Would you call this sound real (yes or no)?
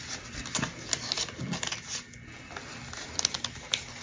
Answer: yes